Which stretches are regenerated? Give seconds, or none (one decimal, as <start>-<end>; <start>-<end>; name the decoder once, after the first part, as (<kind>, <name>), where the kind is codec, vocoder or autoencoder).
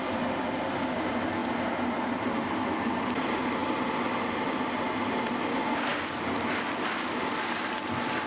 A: none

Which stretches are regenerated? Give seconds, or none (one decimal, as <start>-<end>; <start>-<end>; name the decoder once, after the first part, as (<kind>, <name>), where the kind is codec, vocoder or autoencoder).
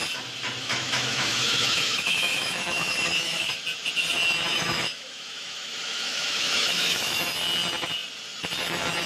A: 0.6-3.5 (autoencoder, DAC-VAE); 4.5-7.2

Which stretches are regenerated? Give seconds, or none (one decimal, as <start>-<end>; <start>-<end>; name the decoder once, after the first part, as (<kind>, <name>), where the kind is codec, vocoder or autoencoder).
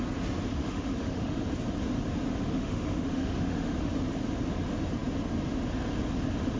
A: 0.6-1.4 (autoencoder, DAC-VAE); 2.3-3.9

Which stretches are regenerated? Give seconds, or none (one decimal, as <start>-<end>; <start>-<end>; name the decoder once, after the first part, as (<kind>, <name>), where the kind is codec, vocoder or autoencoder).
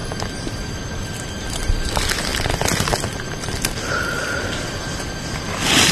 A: none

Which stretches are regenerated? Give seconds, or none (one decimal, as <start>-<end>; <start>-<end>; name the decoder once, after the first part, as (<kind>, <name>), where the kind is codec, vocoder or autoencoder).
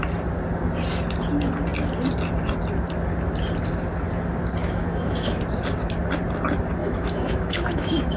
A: 4.6-5.4 (autoencoder, DAC-VAE); 6.8-8.2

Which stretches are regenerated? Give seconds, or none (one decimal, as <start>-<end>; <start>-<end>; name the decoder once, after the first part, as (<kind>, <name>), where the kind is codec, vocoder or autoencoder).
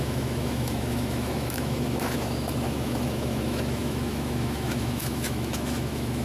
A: 0.0-6.2 (autoencoder, DAC-VAE)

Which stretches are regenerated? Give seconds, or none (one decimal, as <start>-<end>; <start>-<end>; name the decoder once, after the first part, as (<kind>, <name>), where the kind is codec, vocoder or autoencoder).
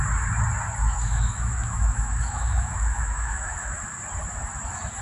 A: 0.8-3.8 (autoencoder, DAC-VAE)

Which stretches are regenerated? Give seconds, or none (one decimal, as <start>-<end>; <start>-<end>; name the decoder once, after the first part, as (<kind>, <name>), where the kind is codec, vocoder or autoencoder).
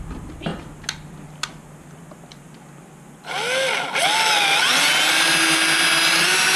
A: none